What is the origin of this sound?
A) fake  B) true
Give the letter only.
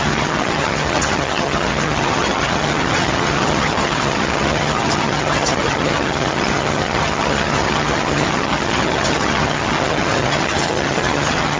A